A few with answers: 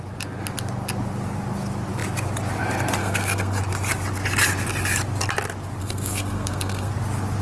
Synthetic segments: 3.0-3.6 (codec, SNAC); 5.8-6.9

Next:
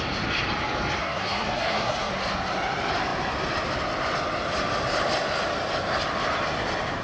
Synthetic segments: 1.0-2.1 (codec, SNAC)

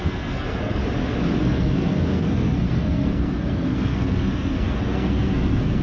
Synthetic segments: 0.0-0.8 (codec, SNAC); 1.4-5.8